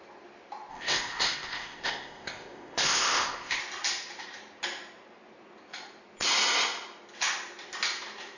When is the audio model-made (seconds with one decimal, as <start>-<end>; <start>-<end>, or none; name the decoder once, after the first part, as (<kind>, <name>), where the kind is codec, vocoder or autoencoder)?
0.7-3.6 (codec, ZipCodec)